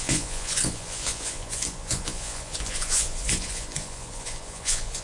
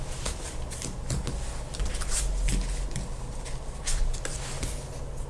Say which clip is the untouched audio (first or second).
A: second